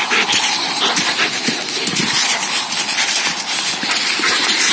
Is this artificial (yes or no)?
no